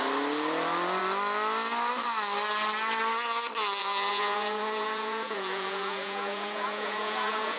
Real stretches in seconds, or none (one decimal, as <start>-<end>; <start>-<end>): 0.0-3.8